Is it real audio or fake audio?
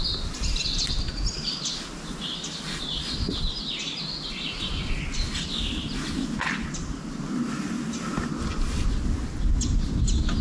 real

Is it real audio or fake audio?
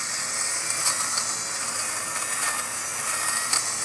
real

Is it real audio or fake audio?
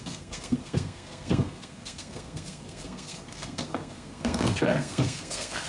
fake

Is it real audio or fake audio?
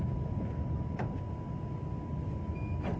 real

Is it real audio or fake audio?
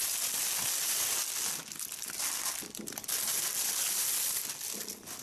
real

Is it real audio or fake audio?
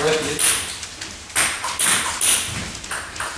real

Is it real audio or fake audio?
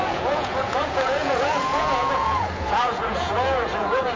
fake